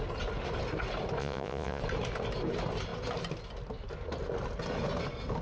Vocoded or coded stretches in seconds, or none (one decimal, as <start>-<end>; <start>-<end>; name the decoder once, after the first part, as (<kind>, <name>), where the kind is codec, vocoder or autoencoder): 1.2-1.8 (vocoder, Vocos)